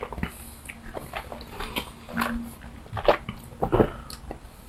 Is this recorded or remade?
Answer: recorded